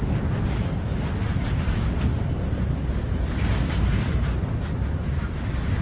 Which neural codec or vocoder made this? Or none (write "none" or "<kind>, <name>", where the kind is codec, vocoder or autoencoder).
none